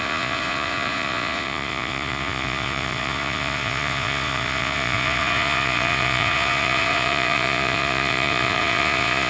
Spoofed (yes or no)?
yes